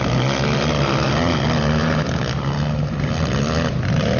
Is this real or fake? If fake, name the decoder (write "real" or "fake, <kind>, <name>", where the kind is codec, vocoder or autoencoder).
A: real